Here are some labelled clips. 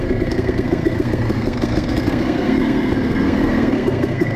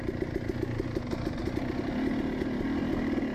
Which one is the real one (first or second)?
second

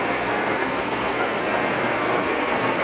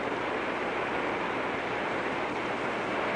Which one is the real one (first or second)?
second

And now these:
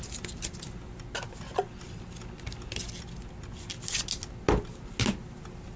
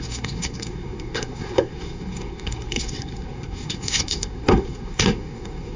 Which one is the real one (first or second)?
first